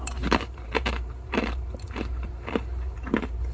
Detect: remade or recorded remade